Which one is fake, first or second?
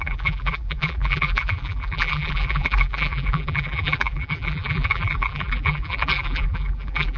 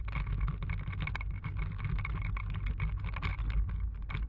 first